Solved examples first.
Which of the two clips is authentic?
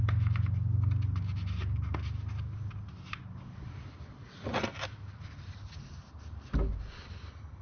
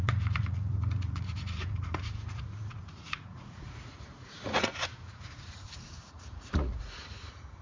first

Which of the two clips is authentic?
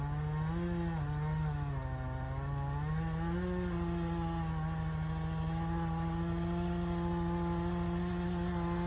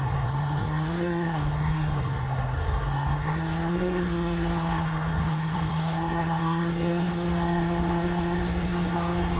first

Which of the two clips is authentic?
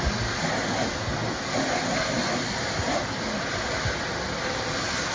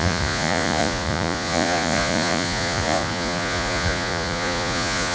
first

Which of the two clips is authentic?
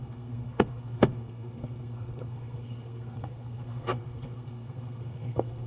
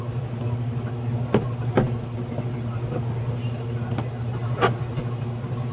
second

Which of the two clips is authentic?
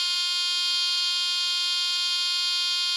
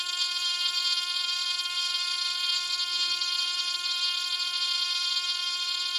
first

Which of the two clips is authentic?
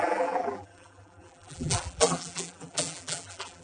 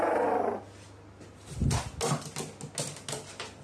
second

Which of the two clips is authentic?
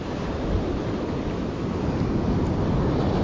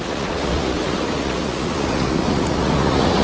first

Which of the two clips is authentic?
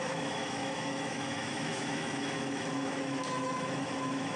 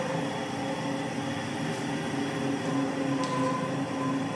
second